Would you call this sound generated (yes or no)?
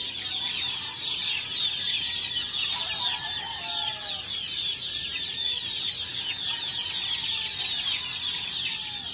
no